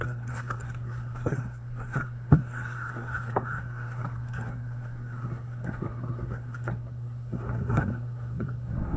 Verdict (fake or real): fake